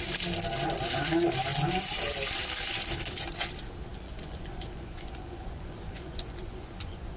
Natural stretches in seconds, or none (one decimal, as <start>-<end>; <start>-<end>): 0.0-3.9